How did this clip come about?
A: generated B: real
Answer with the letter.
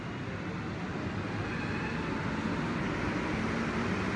B